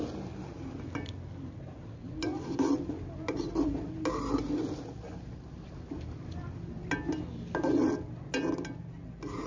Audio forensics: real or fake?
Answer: real